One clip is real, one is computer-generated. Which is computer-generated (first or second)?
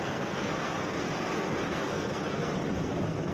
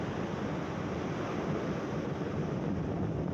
first